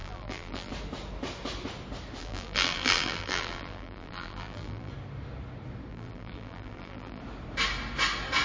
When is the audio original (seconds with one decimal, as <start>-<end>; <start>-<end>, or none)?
0.7-2.2; 4.9-5.9; 7.2-8.4